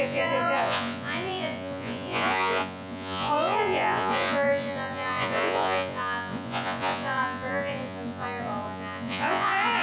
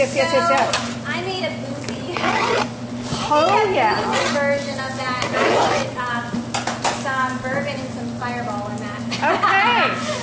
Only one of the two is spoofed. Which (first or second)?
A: first